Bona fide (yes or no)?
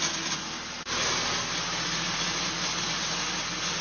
yes